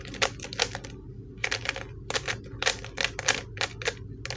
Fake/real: real